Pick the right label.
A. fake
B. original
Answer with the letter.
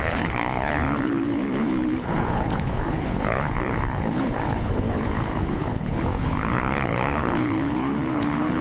A